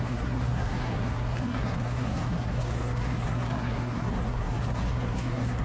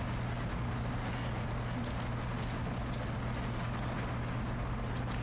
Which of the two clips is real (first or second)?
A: second